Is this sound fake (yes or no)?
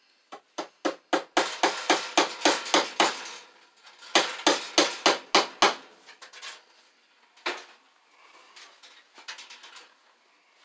no